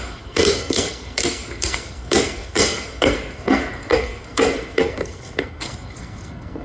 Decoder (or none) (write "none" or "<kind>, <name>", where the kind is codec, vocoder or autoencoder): codec, SNAC